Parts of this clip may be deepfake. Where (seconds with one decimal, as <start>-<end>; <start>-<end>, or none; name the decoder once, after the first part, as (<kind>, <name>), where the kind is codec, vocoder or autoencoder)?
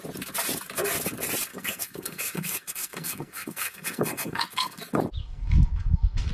1.5-4.8 (codec, SNAC); 5.2-6.3